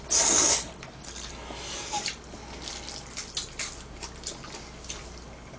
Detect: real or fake real